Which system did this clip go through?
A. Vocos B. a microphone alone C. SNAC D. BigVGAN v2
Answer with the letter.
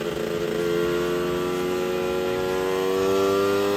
B